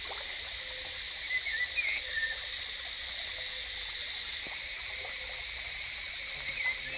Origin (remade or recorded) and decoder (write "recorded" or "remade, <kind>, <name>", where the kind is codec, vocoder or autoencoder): recorded